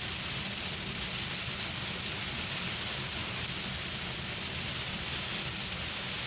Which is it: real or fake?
real